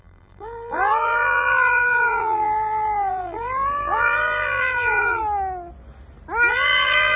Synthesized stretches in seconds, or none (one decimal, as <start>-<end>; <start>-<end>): 0.0-5.2; 6.5-7.2